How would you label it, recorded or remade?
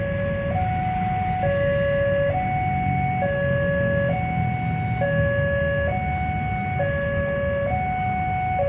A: recorded